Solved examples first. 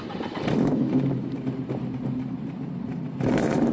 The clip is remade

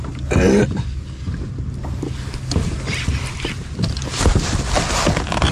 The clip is recorded